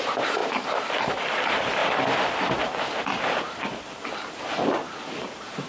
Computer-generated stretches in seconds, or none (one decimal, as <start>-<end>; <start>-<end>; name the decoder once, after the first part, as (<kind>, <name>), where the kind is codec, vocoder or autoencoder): 0.0-1.8 (vocoder, BigVGAN v2); 3.5-5.7